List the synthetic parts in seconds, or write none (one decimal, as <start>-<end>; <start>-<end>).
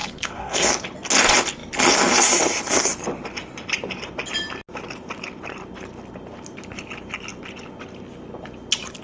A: 0.0-0.7